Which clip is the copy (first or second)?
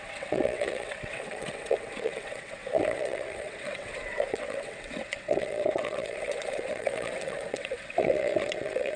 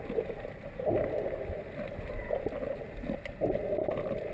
first